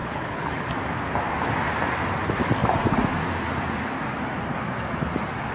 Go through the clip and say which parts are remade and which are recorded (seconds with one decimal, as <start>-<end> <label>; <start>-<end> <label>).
0.0-0.6 remade; 0.6-5.5 recorded